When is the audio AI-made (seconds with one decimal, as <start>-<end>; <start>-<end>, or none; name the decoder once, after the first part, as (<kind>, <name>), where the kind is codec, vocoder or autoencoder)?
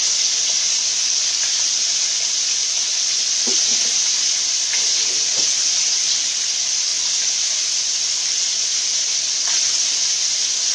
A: 6.9-8.0 (vocoder, BigVGAN v2)